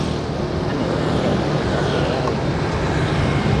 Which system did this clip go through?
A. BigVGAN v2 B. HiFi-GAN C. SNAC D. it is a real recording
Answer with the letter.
D